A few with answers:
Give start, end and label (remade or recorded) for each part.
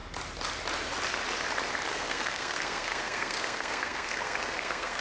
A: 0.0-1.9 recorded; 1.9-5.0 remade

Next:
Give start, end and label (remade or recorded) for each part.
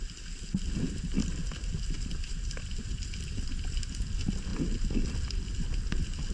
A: 0.0-6.3 recorded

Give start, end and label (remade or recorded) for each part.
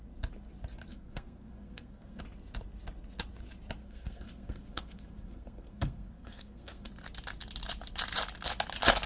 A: 0.0-0.9 recorded; 0.9-2.2 remade; 2.2-3.8 recorded; 3.8-6.9 remade; 6.9-9.1 recorded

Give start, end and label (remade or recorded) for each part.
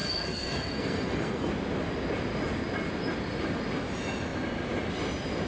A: 0.0-1.5 remade; 1.5-5.5 recorded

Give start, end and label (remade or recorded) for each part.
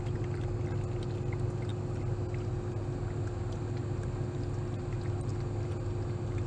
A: 0.0-6.5 recorded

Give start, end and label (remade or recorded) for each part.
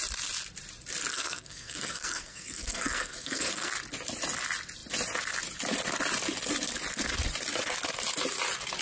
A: 0.0-1.1 recorded; 1.1-3.7 remade; 3.7-8.8 recorded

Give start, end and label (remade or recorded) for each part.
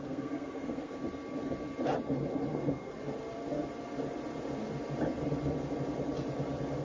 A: 0.0-0.9 remade; 0.9-2.5 recorded; 2.5-2.9 remade; 2.9-6.8 recorded